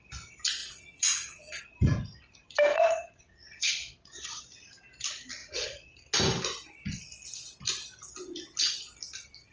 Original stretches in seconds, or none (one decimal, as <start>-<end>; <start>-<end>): 0.0-0.6; 1.6-2.7; 4.4-5.4; 6.0-9.5